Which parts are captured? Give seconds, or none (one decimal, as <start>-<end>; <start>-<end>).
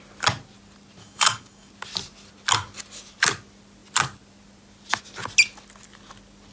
0.0-1.0; 1.7-6.5